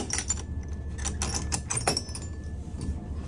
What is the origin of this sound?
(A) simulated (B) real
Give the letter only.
B